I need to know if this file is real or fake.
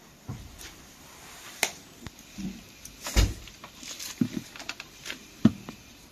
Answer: fake